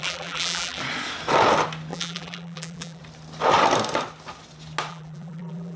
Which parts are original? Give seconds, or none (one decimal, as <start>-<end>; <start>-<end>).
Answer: 0.8-1.9; 3.0-4.9